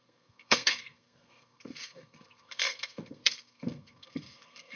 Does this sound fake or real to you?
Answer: fake